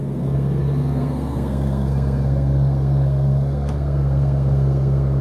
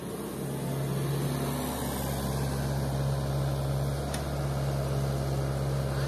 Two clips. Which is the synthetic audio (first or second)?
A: first